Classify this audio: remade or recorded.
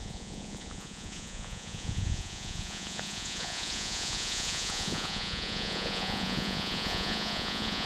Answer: remade